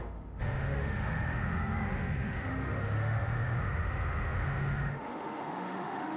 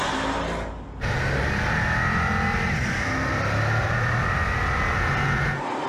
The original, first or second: second